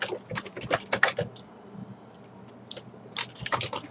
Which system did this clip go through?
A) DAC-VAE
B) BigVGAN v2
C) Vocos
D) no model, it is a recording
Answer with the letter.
D